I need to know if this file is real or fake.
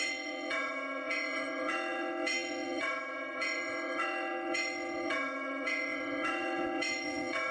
fake